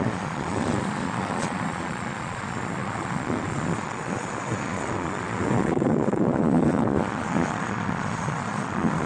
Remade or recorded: remade